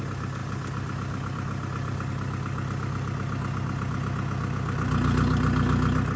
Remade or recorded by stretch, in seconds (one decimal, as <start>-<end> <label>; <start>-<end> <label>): 0.0-6.2 recorded